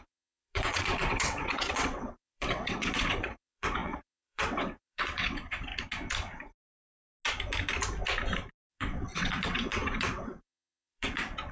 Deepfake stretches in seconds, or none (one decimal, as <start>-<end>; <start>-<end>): 0.0-5.7; 8.7-11.5